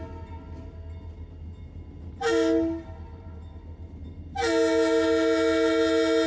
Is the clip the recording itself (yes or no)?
yes